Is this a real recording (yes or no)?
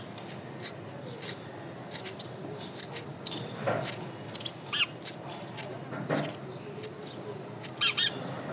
yes